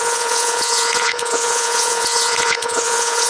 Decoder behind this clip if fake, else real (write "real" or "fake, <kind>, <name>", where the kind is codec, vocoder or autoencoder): fake, vocoder, Vocos